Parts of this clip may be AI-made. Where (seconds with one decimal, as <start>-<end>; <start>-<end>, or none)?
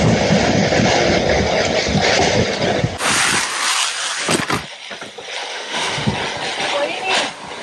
5.5-6.1